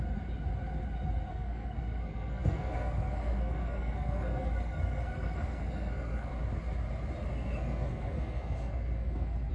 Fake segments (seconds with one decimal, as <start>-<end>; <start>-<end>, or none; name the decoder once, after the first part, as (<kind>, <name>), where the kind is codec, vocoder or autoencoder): 1.3-6.3 (codec, SNAC); 7.3-9.5